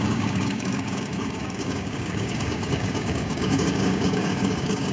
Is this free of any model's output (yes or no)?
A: no